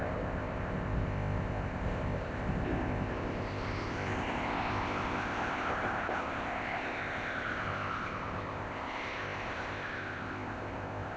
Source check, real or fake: fake